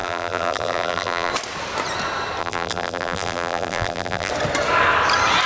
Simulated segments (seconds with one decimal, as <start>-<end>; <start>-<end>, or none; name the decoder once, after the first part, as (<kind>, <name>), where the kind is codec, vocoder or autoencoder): 0.0-1.3 (vocoder, BigVGAN v2); 2.4-4.3